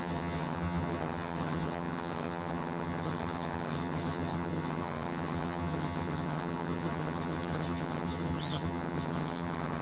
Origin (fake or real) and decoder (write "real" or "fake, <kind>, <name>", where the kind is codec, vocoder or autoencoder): fake, vocoder, HiFi-GAN